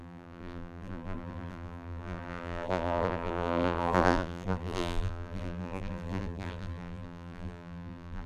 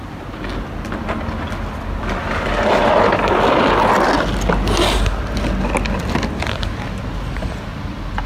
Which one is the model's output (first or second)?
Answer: first